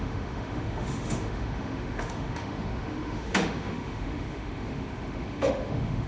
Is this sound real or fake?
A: fake